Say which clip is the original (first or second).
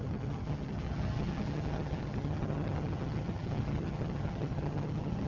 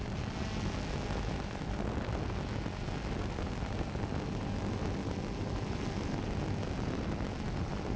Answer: second